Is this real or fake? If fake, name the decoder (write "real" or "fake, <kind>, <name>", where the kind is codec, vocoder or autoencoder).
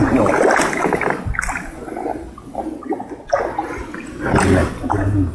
real